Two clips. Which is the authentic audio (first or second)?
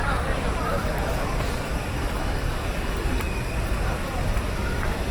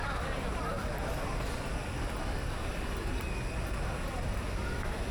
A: second